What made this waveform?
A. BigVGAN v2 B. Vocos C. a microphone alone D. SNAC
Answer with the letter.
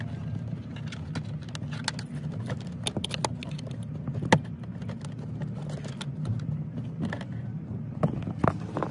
C